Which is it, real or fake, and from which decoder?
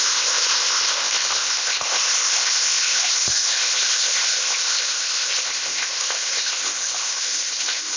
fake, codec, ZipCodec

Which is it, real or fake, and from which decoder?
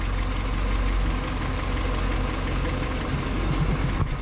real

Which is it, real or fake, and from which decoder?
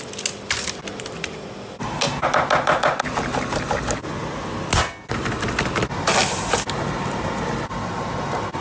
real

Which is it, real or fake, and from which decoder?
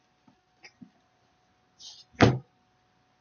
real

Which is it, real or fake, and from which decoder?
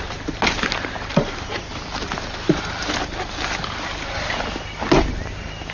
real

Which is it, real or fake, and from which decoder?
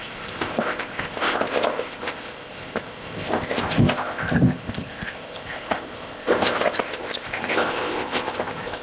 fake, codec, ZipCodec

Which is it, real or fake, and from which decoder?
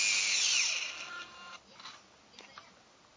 real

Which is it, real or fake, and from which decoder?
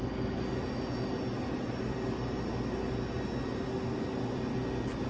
real